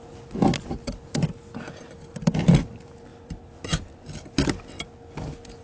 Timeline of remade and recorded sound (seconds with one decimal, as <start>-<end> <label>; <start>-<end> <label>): 0.0-5.6 recorded